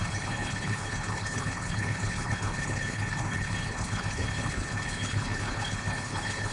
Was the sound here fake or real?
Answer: fake